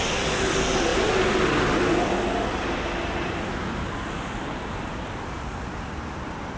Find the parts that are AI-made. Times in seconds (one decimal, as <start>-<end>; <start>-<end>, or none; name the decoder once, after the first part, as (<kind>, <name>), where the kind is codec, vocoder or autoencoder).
none